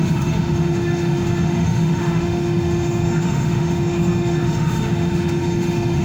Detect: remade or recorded remade